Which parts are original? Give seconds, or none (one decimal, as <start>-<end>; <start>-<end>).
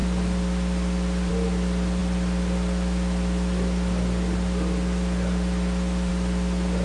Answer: 0.0-6.8